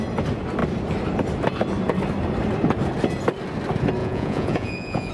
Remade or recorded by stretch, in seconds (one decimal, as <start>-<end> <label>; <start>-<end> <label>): 0.0-4.0 recorded; 4.0-5.1 remade